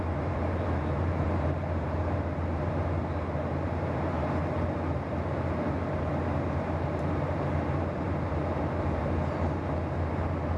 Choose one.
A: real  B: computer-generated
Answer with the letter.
B